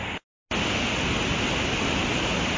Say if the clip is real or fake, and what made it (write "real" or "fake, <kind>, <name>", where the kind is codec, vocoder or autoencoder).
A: real